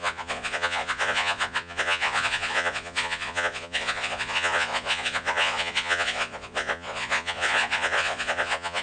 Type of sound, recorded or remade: remade